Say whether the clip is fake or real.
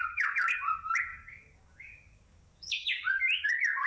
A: fake